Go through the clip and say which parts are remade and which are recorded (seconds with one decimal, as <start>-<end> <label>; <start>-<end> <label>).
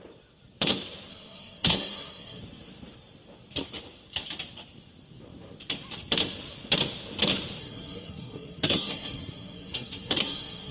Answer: 0.0-1.1 recorded; 1.1-2.4 remade; 2.4-7.6 recorded; 7.6-10.7 remade